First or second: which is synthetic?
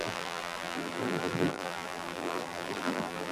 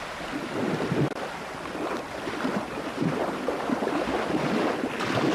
first